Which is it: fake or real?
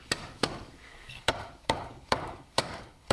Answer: fake